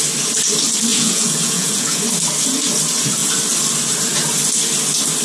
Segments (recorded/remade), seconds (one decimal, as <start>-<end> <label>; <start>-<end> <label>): 0.0-0.9 recorded; 0.9-2.0 remade; 2.0-5.2 recorded